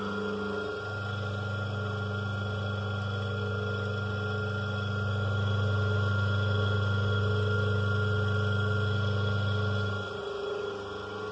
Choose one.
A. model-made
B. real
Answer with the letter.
B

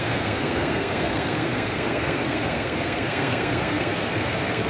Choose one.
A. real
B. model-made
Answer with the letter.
B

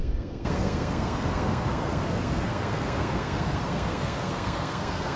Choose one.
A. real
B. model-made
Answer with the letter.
B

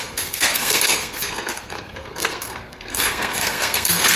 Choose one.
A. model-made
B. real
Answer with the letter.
A